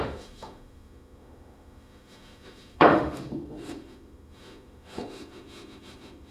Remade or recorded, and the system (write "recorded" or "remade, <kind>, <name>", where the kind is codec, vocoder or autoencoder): remade, autoencoder, DAC-VAE